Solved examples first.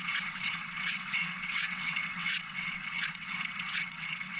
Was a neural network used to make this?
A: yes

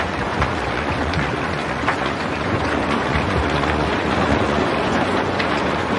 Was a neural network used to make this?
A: yes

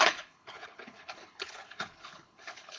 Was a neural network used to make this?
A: yes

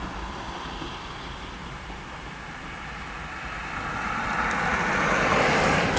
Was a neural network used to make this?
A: yes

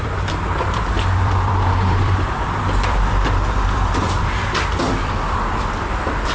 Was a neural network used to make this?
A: yes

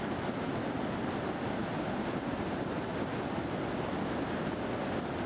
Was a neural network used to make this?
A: no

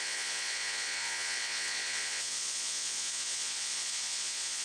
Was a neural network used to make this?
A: yes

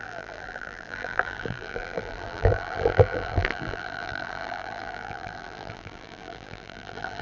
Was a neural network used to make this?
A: yes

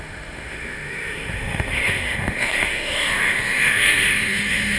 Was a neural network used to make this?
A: yes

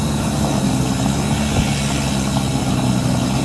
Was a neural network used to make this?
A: no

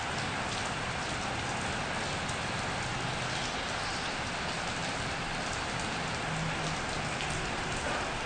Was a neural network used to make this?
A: no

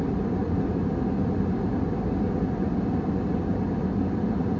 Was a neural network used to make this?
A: no